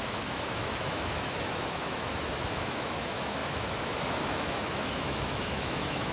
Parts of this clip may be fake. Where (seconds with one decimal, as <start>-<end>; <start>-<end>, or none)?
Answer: 0.0-6.1